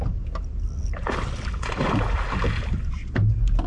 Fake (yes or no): no